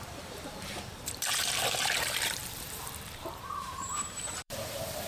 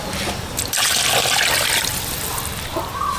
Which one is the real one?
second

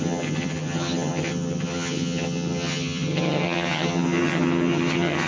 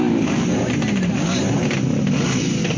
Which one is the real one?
second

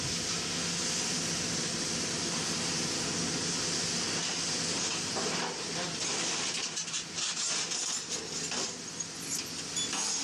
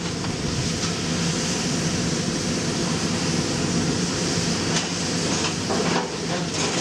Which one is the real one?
first